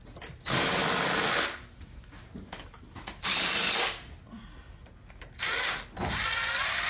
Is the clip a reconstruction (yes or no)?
no